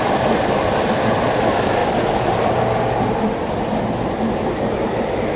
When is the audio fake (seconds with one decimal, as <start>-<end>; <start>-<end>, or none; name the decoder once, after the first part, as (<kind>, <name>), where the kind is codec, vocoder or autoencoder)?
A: none